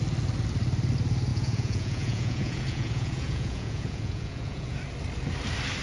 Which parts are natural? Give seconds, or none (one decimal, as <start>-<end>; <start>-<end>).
0.0-1.3; 4.8-5.8